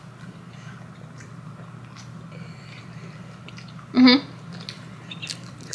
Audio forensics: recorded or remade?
recorded